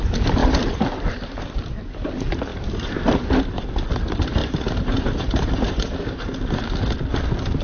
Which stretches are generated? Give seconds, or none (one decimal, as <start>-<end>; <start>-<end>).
0.4-1.9; 2.5-3.3; 4.4-6.0